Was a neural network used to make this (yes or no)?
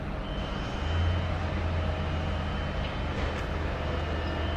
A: no